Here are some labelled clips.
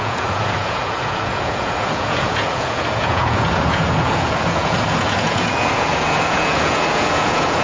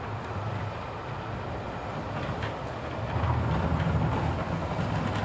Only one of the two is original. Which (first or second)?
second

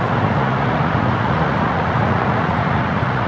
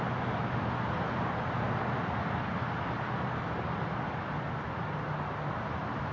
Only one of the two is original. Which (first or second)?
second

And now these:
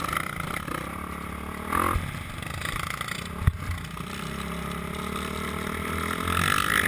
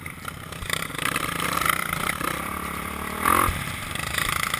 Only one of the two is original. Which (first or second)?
first